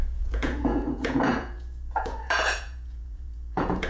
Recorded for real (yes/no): no